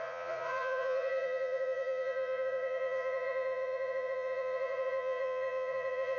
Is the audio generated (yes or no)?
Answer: yes